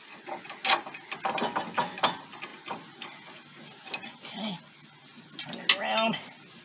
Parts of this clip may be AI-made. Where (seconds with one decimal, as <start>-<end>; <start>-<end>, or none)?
none